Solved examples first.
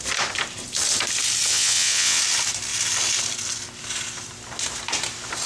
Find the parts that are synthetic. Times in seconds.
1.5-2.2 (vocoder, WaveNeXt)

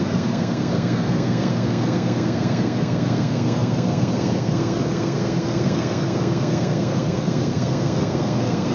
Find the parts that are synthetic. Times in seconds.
0.0-8.7 (codec, SNAC)

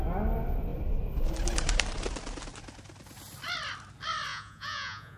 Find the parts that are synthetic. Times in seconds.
4.3-5.2 (vocoder, Vocos)

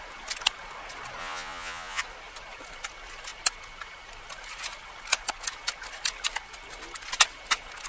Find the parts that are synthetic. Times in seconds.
1.2-2.0 (vocoder, Vocos)

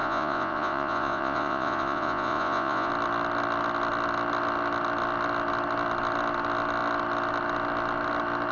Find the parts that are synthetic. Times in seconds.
0.0-2.9 (vocoder, Vocos)

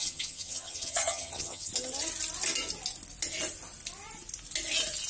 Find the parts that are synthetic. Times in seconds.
0.0-1.7 (vocoder, HiFi-GAN)